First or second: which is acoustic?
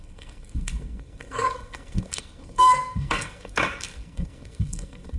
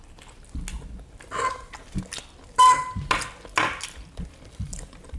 second